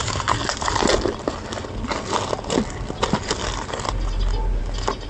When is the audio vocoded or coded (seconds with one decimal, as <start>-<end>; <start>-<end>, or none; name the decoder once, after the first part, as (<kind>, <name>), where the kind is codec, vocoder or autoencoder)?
none